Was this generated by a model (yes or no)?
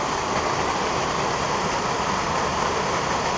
no